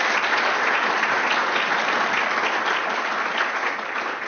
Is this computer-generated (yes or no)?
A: no